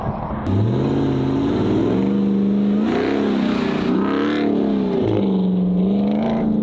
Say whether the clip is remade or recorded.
recorded